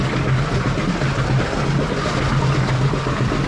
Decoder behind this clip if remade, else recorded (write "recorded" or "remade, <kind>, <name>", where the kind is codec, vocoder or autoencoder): recorded